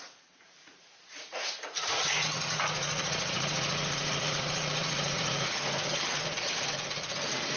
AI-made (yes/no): yes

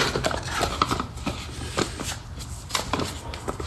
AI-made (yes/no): no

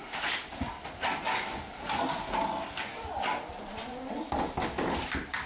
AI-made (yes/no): no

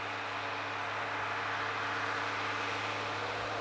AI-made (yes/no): no